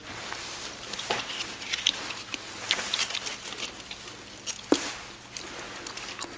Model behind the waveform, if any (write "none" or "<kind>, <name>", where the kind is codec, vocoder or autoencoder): none